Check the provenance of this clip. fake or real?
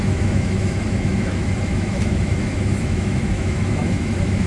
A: fake